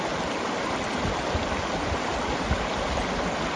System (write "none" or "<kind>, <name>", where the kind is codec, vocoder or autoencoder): none